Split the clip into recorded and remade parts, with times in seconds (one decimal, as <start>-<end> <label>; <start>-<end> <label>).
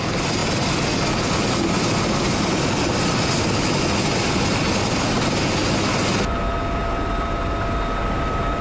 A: 0.0-8.6 recorded